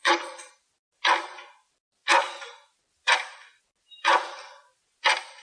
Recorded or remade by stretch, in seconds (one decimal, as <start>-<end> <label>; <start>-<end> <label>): 0.0-0.5 remade; 0.5-5.4 recorded